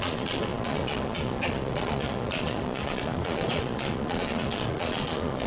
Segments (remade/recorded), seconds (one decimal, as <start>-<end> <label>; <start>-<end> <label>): 0.0-5.5 remade